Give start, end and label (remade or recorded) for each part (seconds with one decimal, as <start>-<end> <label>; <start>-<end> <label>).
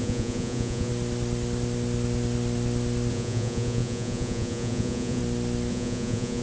0.0-0.9 remade; 0.9-3.1 recorded; 3.1-5.2 remade; 5.2-5.7 recorded; 5.7-6.4 remade